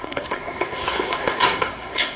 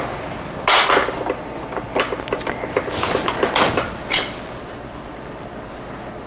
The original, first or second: second